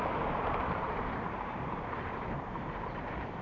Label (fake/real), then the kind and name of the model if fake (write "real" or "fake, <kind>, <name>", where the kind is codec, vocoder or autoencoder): fake, vocoder, BigVGAN v2